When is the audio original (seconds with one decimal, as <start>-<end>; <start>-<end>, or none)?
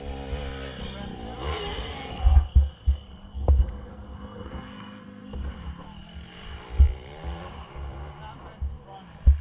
0.0-1.5; 5.5-9.4